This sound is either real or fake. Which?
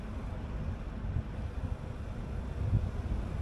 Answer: real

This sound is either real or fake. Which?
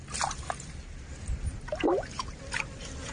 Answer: real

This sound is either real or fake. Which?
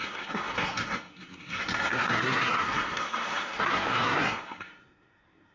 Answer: fake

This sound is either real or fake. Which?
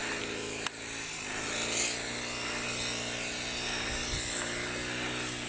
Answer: real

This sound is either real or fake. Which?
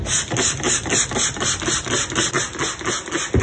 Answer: real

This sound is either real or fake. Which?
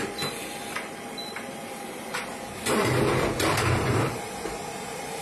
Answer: fake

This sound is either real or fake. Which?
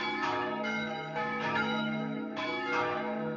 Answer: fake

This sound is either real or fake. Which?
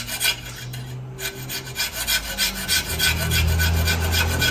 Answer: real